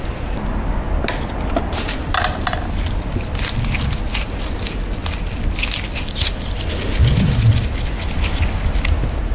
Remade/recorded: recorded